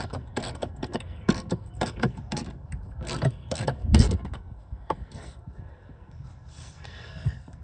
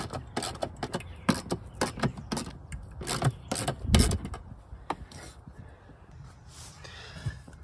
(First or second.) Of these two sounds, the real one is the second